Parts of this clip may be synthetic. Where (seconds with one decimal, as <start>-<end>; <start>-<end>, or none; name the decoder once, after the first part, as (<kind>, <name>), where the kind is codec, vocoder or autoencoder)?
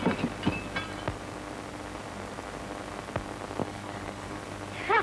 3.6-4.4 (codec, DAC)